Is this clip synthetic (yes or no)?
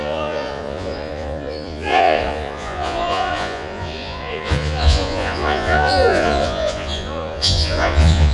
yes